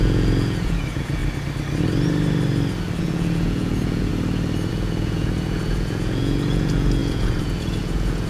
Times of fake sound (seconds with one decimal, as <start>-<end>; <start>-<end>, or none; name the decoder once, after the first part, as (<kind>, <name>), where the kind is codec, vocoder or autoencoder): 0.0-1.2 (vocoder, Vocos); 3.0-4.1; 4.7-8.3